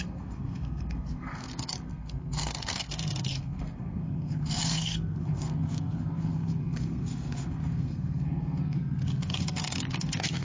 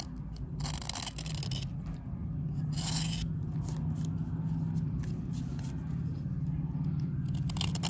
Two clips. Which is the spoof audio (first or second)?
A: first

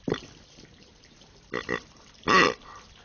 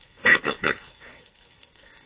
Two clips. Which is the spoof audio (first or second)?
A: second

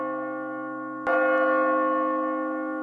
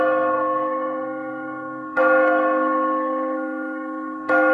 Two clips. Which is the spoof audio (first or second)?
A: second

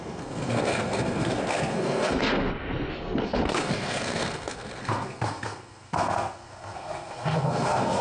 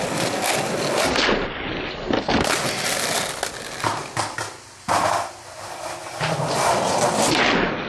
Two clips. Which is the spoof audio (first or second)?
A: first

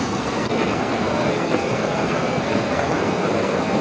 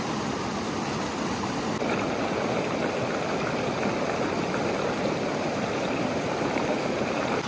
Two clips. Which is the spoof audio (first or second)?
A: first